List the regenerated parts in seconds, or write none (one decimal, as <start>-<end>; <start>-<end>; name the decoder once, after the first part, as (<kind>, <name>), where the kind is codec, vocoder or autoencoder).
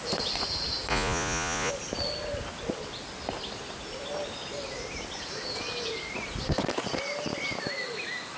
0.9-1.7 (vocoder, Vocos)